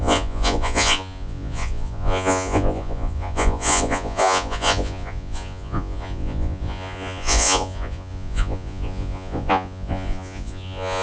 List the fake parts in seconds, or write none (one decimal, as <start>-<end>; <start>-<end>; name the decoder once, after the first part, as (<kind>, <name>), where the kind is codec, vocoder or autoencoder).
0.0-11.0 (vocoder, Vocos)